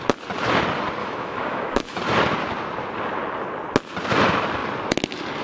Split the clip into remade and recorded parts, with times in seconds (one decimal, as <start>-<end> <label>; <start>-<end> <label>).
0.0-1.0 recorded; 1.0-2.0 remade; 2.0-5.4 recorded